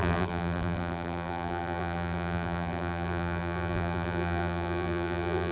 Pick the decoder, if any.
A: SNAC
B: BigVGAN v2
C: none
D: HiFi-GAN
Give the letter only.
B